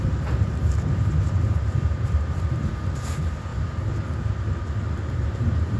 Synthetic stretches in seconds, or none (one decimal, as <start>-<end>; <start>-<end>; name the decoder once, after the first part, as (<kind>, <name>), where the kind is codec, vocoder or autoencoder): 0.0-5.8 (vocoder, BigVGAN v2)